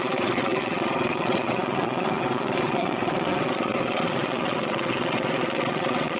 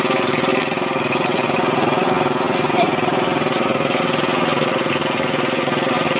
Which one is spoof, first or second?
first